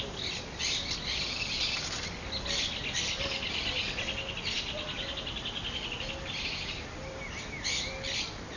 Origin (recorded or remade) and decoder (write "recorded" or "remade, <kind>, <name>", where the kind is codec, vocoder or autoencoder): recorded